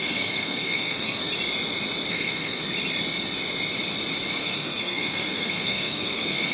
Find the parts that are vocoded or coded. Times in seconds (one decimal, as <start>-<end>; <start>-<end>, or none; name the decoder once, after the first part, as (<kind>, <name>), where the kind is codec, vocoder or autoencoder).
0.0-1.2 (codec, SNAC); 2.1-2.6; 4.3-6.5